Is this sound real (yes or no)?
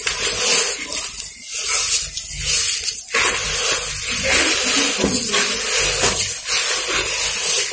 yes